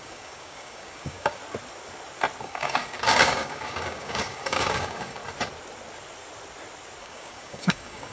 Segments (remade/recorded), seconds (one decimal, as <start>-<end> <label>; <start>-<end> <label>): 0.0-1.4 remade; 1.4-2.4 recorded; 2.4-5.2 remade; 5.2-7.0 recorded; 7.0-8.1 remade